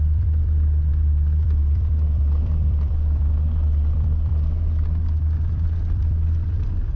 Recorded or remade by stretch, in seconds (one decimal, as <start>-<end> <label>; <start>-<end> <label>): 0.0-4.3 remade; 4.3-5.2 recorded; 5.2-7.0 remade